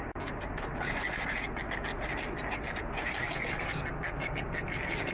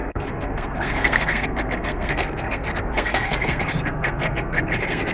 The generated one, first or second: second